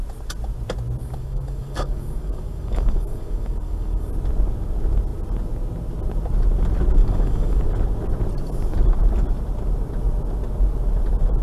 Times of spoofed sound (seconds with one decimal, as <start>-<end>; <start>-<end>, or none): 1.0-4.1; 7.0-7.6